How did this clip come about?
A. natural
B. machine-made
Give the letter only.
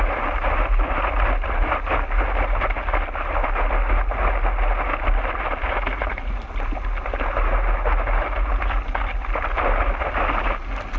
A